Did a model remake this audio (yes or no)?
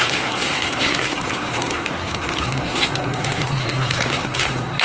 yes